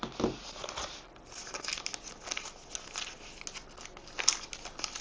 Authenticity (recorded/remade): recorded